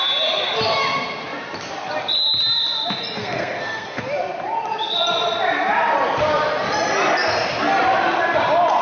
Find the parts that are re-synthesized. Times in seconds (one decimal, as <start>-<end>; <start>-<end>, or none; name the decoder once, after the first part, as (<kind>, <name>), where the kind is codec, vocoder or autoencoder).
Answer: 3.2-4.0 (codec, SNAC)